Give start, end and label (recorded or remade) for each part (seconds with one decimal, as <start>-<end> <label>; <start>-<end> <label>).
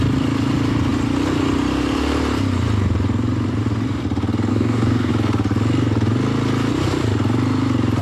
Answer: 0.0-4.5 recorded; 4.5-5.1 remade; 5.1-8.0 recorded